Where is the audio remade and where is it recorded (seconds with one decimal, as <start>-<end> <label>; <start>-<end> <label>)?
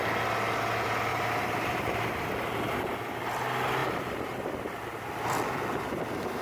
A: 0.0-1.1 recorded; 1.1-2.3 remade; 2.3-3.8 recorded; 3.8-5.8 remade; 5.8-6.4 recorded